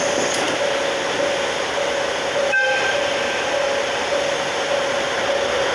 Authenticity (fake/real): real